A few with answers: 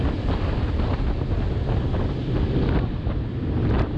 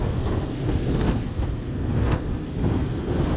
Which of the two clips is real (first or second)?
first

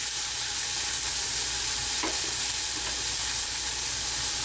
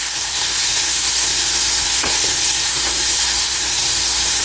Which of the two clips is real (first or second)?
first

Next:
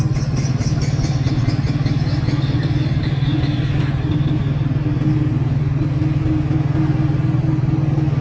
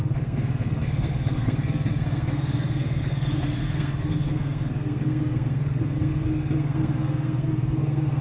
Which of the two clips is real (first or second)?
first